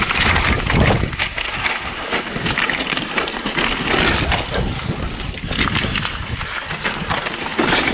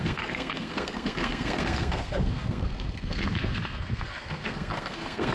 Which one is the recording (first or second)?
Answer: first